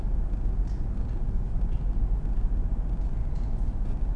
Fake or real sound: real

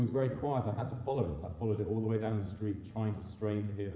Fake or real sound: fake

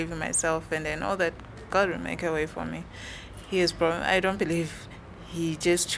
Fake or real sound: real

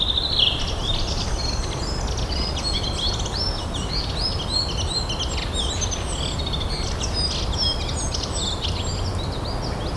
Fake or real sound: real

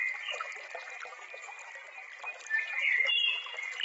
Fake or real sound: real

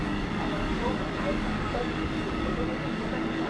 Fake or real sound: fake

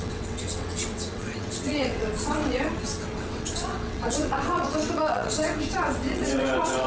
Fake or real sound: fake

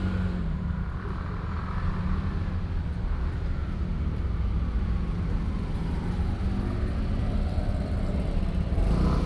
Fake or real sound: real